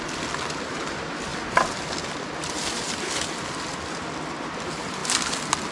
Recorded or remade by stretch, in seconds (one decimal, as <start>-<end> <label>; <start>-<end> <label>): 0.0-5.7 recorded